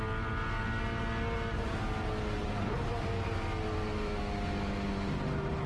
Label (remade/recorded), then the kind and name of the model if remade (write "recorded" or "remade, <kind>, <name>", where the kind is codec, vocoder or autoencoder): recorded